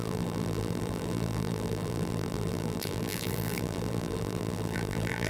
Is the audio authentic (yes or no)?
no